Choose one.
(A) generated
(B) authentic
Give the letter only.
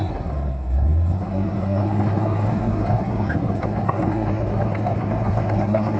A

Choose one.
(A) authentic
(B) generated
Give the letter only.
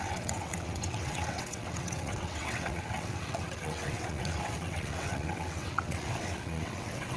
B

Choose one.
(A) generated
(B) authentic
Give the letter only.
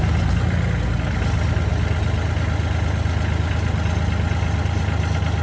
B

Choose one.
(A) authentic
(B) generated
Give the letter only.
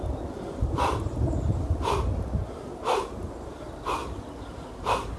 A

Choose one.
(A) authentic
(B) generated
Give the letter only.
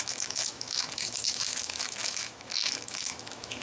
B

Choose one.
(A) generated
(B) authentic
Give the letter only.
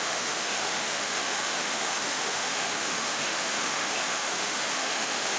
A